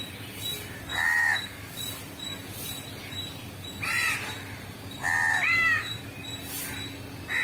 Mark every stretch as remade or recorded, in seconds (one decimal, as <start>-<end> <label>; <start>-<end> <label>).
0.0-1.2 recorded; 1.2-1.8 remade; 1.8-5.5 recorded; 5.5-6.1 remade; 6.1-7.4 recorded